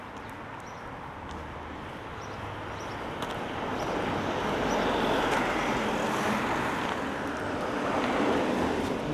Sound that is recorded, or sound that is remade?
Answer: recorded